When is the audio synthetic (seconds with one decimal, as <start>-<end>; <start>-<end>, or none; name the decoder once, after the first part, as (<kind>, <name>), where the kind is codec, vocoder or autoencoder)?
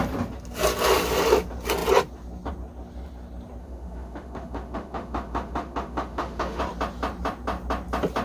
3.6-6.6 (autoencoder, DAC-VAE)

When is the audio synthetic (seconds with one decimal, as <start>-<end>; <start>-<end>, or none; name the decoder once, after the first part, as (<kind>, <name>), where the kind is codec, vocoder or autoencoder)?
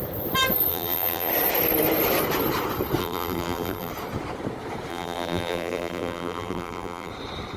0.7-1.3 (vocoder, BigVGAN v2); 3.0-3.9; 4.9-7.1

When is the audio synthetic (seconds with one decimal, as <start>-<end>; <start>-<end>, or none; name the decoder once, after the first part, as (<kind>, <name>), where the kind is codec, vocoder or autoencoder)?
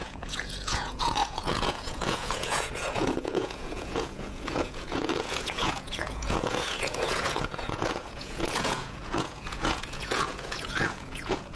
0.0-11.6 (vocoder, Vocos)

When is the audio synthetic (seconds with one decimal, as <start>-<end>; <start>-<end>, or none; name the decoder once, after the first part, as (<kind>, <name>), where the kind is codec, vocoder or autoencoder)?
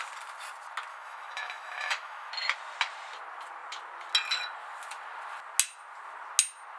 0.9-2.3 (autoencoder, DAC-VAE)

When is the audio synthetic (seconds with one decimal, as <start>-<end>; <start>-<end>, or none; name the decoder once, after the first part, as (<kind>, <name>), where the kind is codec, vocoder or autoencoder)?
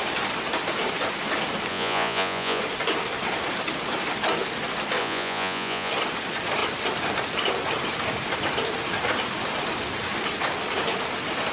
1.7-2.6 (vocoder, Vocos); 5.0-5.9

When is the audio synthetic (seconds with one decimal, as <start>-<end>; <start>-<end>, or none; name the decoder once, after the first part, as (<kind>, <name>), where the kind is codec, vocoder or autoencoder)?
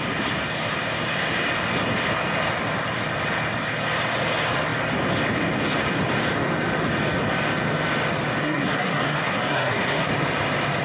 8.4-10.1 (codec, SNAC)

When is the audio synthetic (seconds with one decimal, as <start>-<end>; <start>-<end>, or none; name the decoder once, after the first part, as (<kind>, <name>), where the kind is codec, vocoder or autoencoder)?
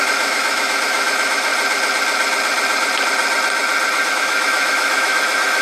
0.0-1.5 (autoencoder, DAC-VAE); 4.1-5.6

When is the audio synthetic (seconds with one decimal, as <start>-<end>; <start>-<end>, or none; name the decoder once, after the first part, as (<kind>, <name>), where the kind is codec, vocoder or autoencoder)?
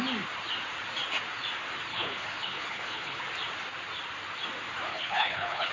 1.9-3.2 (codec, HILCodec); 4.9-5.7